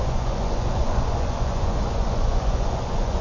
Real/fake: fake